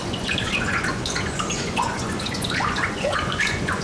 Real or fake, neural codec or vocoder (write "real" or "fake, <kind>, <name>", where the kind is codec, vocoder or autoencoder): fake, vocoder, Vocos